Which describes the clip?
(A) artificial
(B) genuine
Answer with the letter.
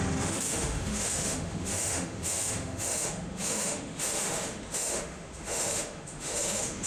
A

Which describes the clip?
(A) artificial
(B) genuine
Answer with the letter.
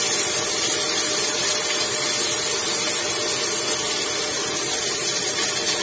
B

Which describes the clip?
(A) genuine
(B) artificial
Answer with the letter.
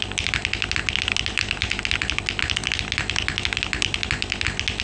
A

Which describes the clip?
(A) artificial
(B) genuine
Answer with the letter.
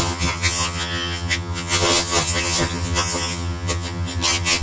A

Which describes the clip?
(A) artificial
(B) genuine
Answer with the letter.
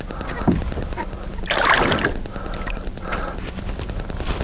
B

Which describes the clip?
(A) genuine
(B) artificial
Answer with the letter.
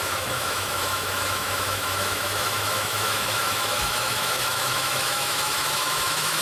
B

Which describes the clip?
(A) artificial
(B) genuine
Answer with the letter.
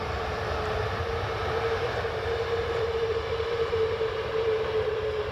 A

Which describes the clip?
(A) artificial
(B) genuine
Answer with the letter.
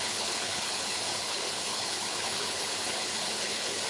A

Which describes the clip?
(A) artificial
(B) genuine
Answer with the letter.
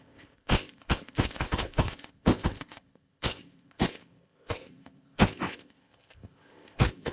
A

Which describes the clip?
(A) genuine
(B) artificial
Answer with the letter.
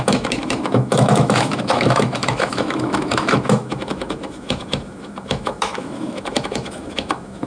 B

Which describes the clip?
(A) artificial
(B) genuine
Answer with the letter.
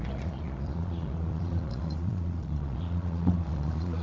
A